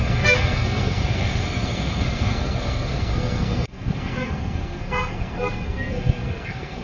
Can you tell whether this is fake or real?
fake